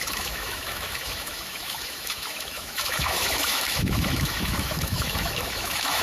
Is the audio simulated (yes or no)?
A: yes